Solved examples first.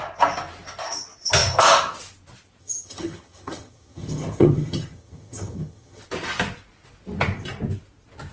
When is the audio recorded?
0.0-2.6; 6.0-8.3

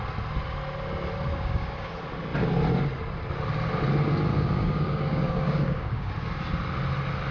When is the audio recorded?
0.0-1.3; 1.9-4.3; 6.1-7.3

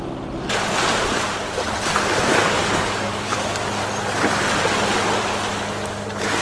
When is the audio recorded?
0.0-2.4; 3.5-6.4

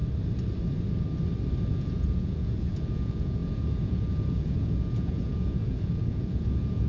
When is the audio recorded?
0.0-1.7

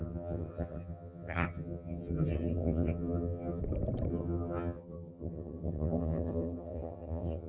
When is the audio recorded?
3.6-4.1

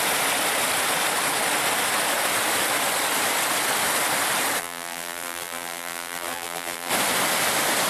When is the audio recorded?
0.0-4.6; 6.9-7.9